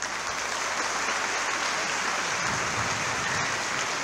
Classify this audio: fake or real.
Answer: real